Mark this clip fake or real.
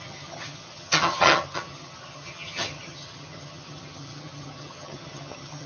fake